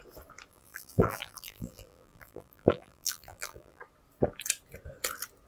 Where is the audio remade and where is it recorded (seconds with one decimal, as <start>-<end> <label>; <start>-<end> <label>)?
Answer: 0.0-0.5 recorded; 0.5-3.8 remade; 3.8-5.5 recorded